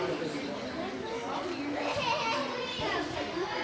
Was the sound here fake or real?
real